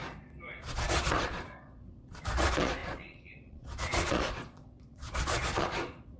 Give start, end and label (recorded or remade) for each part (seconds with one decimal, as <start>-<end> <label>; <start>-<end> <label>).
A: 0.0-0.6 recorded; 0.6-6.2 remade